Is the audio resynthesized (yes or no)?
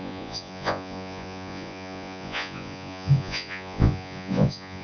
yes